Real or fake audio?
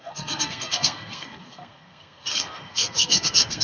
fake